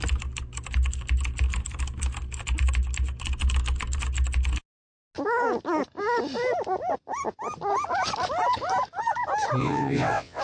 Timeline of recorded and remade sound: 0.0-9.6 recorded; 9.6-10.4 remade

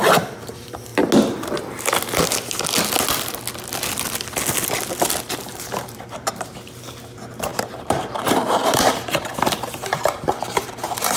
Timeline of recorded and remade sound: 0.0-0.9 remade; 0.9-5.3 recorded; 5.3-11.2 remade